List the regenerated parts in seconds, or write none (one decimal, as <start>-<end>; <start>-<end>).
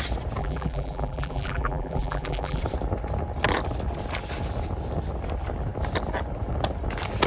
0.4-2.6